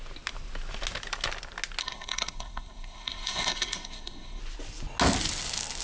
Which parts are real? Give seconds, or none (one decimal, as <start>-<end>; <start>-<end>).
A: 0.0-1.8; 4.4-5.8